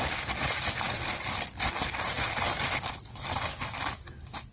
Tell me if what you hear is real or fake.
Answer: real